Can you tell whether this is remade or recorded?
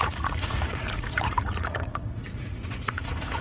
remade